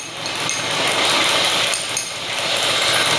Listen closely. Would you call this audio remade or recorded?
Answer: recorded